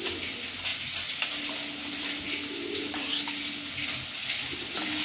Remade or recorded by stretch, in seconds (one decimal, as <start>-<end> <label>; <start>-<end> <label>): 0.0-5.0 recorded